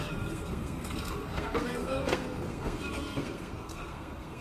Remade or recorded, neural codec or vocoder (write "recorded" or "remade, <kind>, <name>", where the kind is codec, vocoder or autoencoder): remade, codec, SNAC